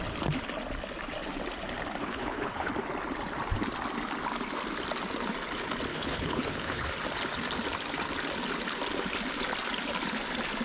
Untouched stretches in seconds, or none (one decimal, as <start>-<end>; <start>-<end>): 0.0-2.0; 2.7-5.9; 6.9-10.6